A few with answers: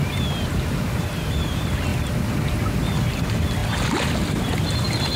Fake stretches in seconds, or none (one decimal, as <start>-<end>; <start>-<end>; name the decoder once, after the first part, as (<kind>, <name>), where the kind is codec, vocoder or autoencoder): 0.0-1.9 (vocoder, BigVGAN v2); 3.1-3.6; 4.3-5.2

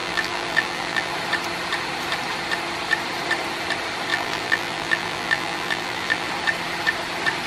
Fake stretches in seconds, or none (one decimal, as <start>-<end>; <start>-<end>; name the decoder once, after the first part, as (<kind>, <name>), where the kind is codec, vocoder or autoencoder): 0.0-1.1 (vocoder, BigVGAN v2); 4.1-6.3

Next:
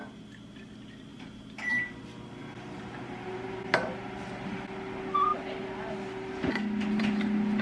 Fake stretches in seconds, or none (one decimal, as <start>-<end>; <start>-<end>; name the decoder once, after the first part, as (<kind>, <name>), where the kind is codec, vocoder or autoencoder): 1.1-1.7 (vocoder, BigVGAN v2); 2.4-3.6

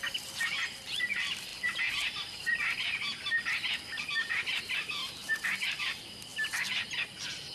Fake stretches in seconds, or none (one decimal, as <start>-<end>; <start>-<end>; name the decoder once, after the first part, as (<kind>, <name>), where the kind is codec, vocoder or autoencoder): 0.0-5.0 (vocoder, BigVGAN v2); 5.8-6.3; 6.9-7.5